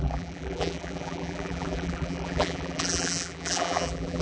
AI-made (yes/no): yes